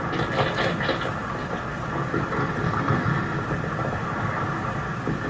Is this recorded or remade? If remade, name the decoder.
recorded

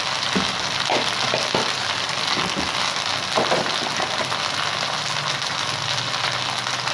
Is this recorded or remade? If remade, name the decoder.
recorded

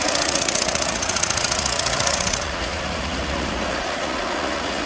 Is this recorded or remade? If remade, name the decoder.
remade, vocoder, Vocos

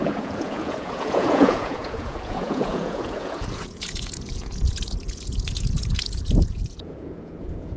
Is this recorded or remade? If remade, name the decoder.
remade, vocoder, Vocos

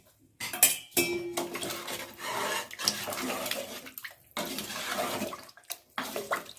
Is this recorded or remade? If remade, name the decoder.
recorded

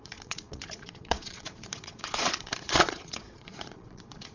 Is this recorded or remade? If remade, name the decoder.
remade, vocoder, Vocos